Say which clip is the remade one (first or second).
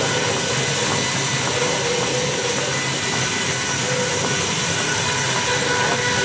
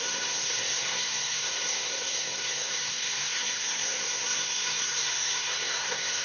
second